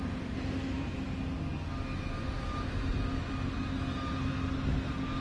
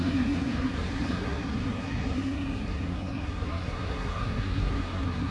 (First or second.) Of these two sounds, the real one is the first